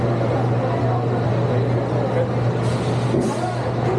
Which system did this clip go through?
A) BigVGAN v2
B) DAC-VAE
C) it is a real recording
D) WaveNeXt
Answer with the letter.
C